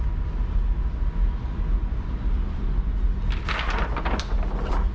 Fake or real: real